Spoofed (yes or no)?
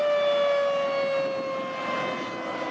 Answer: no